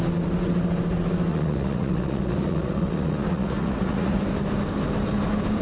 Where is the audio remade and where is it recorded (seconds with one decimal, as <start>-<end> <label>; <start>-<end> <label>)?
0.0-1.3 recorded; 1.3-4.2 remade; 4.2-5.6 recorded

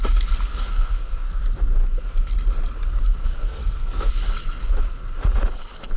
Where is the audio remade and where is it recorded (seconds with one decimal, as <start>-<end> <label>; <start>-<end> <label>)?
0.0-0.5 recorded; 0.5-1.4 remade; 1.4-3.2 recorded; 3.2-4.1 remade; 4.1-6.0 recorded

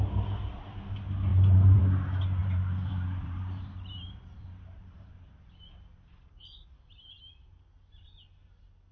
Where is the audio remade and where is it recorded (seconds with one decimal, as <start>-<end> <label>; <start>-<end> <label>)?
0.0-1.3 recorded; 1.3-1.8 remade; 1.8-2.4 recorded; 2.4-5.5 remade; 5.5-8.9 recorded

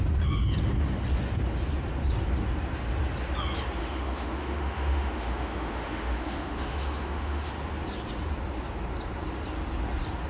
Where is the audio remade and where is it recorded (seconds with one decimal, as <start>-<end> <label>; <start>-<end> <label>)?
0.0-3.8 recorded; 3.8-7.5 remade; 7.5-10.3 recorded